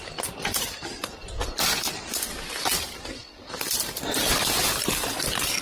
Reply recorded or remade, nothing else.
recorded